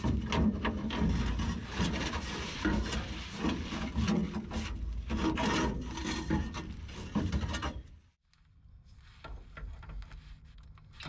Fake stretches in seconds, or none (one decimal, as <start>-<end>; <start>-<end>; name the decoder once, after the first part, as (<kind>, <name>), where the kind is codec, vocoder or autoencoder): 1.6-3.0 (vocoder, BigVGAN v2); 6.0-8.1